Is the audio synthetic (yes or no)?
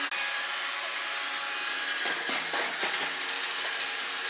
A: no